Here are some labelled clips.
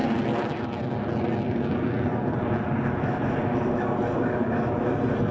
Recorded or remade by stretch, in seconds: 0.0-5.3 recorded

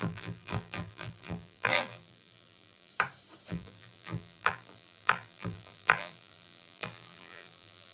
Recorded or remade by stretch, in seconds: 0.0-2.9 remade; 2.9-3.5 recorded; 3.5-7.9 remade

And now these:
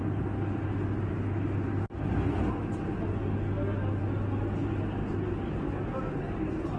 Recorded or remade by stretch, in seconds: 0.0-6.8 recorded

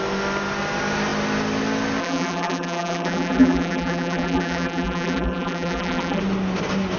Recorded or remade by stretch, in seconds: 0.0-2.0 recorded; 2.0-6.2 remade; 6.2-7.0 recorded